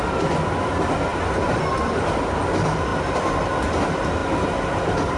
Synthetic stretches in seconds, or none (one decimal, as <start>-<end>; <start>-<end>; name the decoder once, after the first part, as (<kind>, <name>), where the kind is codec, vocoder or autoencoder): none